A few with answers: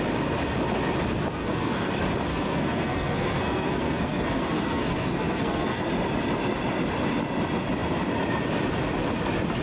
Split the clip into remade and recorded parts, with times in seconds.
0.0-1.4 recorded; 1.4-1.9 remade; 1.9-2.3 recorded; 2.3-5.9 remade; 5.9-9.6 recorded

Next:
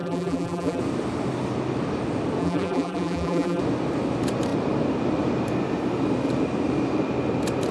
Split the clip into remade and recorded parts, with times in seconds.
0.0-0.8 remade; 0.8-2.4 recorded; 2.4-3.6 remade; 3.6-7.7 recorded

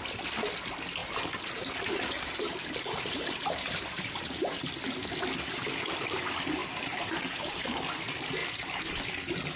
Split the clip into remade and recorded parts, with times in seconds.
0.0-1.0 recorded; 1.0-4.6 remade; 4.6-6.6 recorded; 6.6-7.8 remade; 7.8-8.4 recorded; 8.4-9.0 remade; 9.0-9.6 recorded